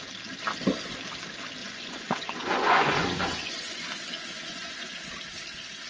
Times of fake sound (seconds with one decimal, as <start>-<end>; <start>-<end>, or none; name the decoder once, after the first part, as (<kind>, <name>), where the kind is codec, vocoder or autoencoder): 1.6-5.1 (vocoder, Vocos)